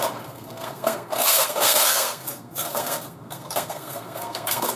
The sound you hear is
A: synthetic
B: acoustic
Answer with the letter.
A